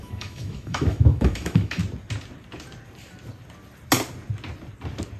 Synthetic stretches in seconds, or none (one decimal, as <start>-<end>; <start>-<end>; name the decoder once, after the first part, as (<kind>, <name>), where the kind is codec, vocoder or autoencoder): 0.0-1.8 (autoencoder, DAC-VAE)